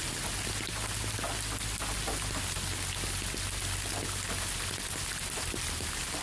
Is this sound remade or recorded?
recorded